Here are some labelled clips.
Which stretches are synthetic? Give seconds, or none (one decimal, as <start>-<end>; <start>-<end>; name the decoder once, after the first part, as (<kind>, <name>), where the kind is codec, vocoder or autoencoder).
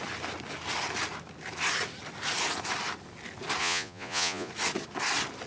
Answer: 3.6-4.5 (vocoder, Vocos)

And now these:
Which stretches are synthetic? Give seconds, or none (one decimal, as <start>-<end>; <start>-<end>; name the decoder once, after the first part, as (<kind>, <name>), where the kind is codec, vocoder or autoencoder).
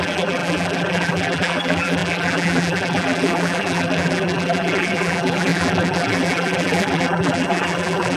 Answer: 0.0-8.2 (vocoder, BigVGAN v2)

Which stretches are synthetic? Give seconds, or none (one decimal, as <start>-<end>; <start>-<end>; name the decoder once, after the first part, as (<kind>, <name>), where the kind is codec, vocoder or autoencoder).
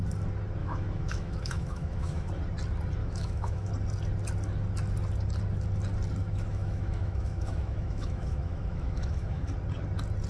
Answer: 0.6-2.3 (autoencoder, DAC-VAE); 3.0-3.7; 6.2-9.5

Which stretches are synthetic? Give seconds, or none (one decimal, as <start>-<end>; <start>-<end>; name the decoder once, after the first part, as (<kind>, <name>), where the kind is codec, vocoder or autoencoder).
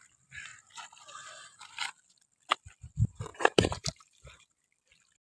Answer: 3.3-4.6 (vocoder, BigVGAN v2)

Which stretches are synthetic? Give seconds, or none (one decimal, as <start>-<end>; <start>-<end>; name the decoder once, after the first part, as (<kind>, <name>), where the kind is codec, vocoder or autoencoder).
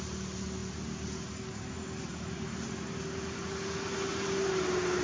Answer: none